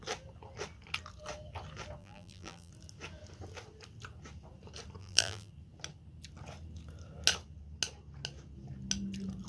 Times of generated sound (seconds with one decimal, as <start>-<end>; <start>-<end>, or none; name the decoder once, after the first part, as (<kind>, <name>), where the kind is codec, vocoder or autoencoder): 2.0-2.7 (vocoder, BigVGAN v2); 5.0-5.5